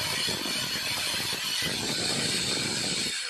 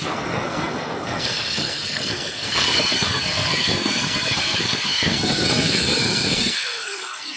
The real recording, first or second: first